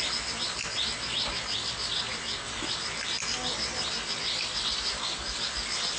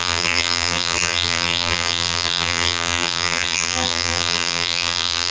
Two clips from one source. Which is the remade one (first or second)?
second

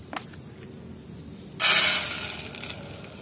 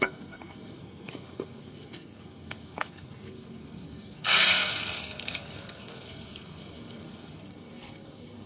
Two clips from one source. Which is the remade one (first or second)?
second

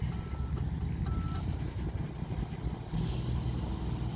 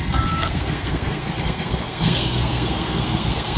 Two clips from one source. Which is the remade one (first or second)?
second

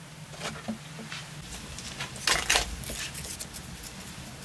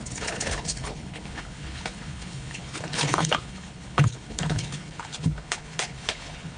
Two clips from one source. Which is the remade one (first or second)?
second